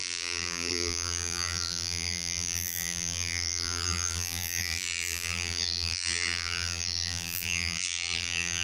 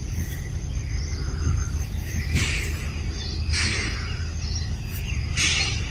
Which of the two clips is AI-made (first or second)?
first